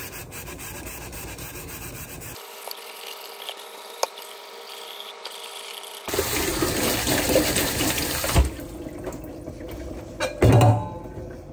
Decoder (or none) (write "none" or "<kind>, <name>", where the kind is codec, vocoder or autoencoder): none